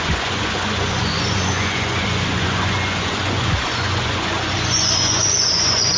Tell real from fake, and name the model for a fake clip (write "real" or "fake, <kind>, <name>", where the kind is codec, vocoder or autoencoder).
fake, vocoder, Vocos